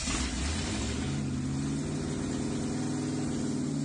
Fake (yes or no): no